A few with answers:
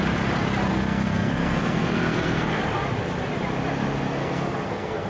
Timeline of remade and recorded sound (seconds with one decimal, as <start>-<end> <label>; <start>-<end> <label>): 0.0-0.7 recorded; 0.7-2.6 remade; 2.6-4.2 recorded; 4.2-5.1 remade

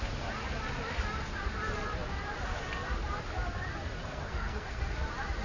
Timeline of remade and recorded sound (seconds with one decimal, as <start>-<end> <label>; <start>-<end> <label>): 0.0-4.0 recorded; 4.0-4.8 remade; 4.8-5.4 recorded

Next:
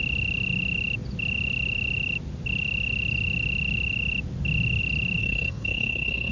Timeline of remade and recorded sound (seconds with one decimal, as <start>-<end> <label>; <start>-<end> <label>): 0.0-5.2 recorded; 5.2-6.3 remade

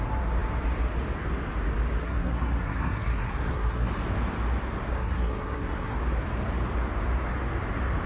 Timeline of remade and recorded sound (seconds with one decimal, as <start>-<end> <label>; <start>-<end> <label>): 0.0-2.0 recorded; 2.0-3.9 remade; 3.9-4.9 recorded; 4.9-6.0 remade; 6.0-8.1 recorded

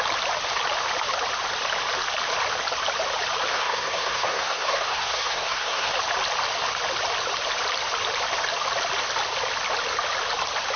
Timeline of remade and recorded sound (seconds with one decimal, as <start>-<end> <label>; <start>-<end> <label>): 0.0-3.5 recorded; 3.5-5.9 remade; 5.9-10.8 recorded

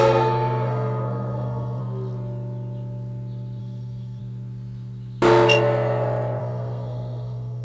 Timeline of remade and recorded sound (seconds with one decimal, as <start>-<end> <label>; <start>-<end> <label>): 0.0-1.8 remade; 1.8-3.6 recorded; 3.6-4.2 remade; 4.2-6.4 recorded; 6.4-7.6 remade

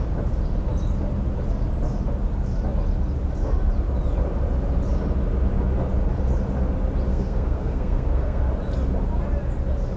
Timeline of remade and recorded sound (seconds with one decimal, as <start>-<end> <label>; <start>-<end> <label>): 0.0-7.1 recorded; 7.1-8.4 remade; 8.4-10.0 recorded